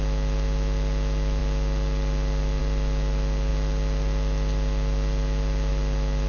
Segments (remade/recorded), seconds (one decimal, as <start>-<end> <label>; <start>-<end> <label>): 0.0-6.3 recorded